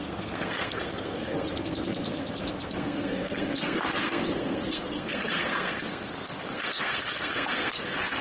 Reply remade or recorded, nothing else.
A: remade